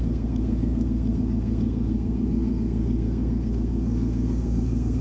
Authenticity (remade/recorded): remade